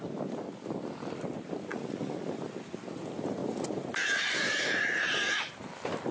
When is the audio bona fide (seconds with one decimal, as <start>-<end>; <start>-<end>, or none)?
0.0-1.7; 2.3-6.1